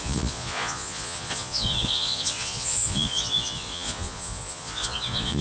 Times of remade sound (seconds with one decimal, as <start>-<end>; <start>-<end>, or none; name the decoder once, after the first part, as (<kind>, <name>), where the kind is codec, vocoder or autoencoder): 0.0-5.4 (vocoder, Vocos)